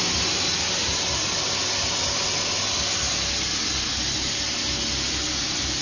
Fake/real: real